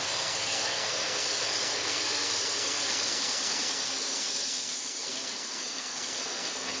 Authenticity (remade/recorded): remade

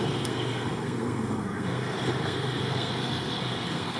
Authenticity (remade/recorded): remade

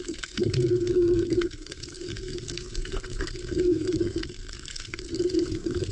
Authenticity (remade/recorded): remade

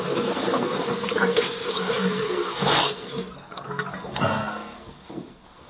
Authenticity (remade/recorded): remade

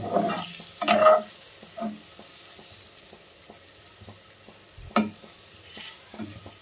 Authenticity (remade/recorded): recorded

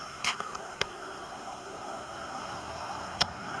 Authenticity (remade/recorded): remade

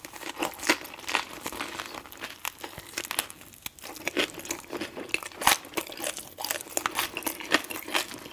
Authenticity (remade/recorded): recorded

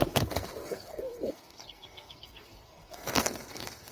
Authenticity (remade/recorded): remade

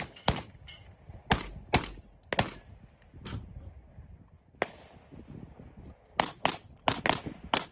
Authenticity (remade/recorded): recorded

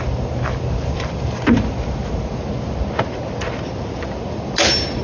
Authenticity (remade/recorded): recorded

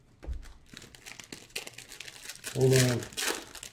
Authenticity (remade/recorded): recorded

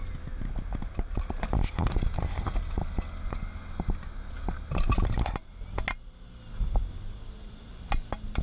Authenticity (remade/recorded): recorded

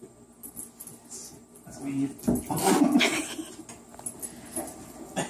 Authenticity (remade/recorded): recorded